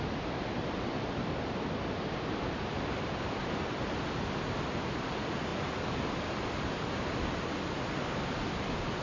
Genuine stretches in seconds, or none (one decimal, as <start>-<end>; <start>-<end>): 0.0-9.0